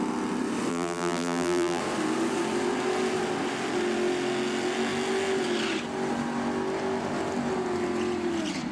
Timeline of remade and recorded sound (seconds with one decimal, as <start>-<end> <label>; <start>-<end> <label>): 0.0-0.7 recorded; 0.7-1.8 remade; 1.8-8.7 recorded